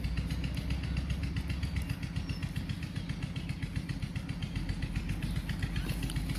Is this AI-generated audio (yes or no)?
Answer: no